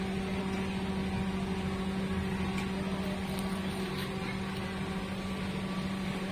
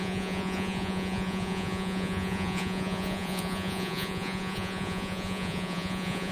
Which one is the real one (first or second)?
first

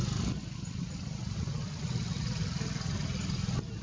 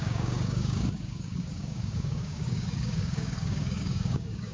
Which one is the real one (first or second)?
first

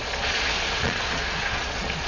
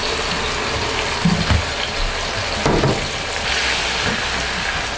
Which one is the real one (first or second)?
second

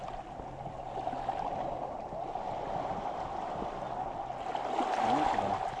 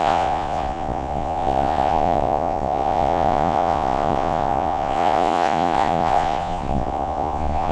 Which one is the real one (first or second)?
first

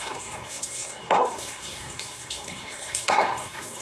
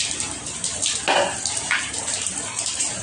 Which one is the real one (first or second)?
second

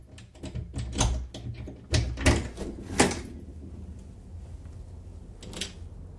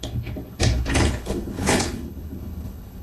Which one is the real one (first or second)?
first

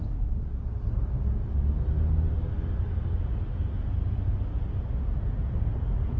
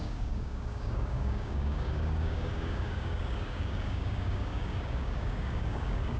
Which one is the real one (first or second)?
first